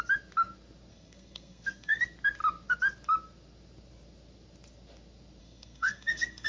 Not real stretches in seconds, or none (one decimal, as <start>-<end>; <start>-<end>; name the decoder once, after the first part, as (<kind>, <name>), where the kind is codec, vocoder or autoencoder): 0.9-2.0 (codec, SNAC); 5.4-6.5